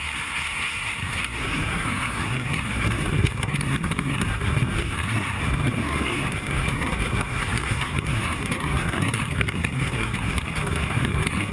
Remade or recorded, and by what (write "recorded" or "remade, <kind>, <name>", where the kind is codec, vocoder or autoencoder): remade, codec, SNAC